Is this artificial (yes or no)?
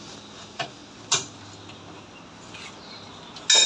no